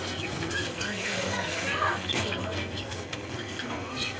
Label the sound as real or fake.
fake